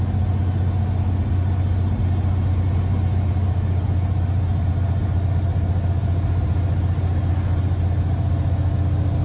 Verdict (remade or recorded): recorded